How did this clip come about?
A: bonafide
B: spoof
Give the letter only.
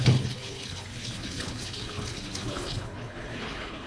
B